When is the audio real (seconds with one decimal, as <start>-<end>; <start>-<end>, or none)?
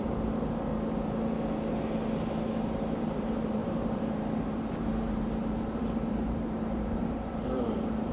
0.7-2.3